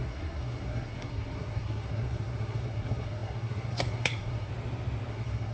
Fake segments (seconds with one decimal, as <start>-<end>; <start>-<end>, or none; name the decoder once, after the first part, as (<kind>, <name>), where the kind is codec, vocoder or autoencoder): 0.0-4.5 (codec, SNAC); 5.1-5.5